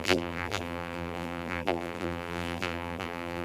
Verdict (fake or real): fake